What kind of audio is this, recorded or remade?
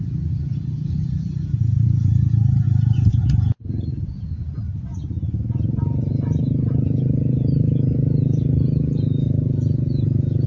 remade